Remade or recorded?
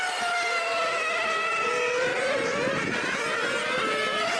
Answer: recorded